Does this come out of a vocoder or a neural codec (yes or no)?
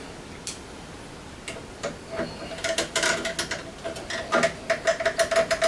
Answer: no